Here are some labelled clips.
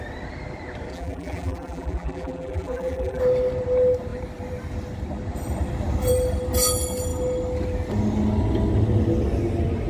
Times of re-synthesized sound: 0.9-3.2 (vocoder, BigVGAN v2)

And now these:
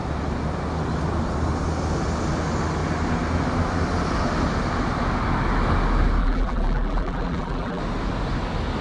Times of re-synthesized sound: 6.2-7.8 (vocoder, BigVGAN v2)

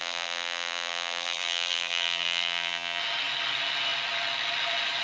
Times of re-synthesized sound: 0.0-3.0 (vocoder, BigVGAN v2)

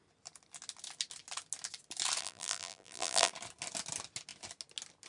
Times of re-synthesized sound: 2.2-3.3 (vocoder, BigVGAN v2)